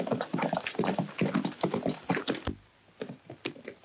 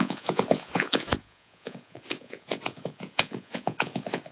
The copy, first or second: second